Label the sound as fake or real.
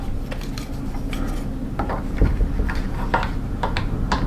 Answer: real